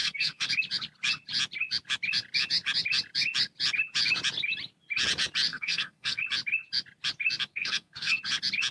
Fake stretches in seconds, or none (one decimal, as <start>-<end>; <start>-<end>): 0.0-0.5; 5.5-6.2; 7.5-8.2